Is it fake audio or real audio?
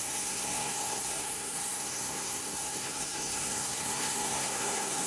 fake